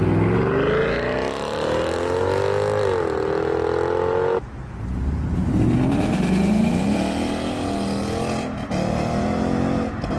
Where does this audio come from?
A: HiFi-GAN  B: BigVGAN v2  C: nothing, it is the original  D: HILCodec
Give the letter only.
C